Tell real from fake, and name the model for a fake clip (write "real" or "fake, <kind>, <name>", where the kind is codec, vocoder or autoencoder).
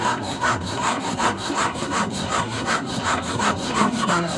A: fake, codec, SNAC